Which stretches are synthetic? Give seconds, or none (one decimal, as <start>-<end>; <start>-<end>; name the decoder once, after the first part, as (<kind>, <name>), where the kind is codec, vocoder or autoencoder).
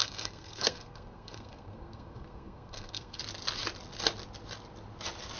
0.0-3.2 (codec, SNAC)